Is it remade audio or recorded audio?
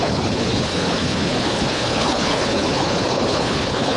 remade